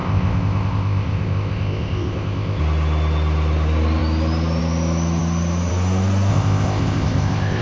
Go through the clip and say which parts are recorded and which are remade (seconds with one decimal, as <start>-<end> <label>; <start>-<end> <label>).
0.0-2.6 remade; 2.6-6.3 recorded; 6.3-7.6 remade